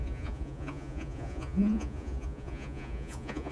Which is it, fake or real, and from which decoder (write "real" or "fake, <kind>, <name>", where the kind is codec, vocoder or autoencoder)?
fake, vocoder, Vocos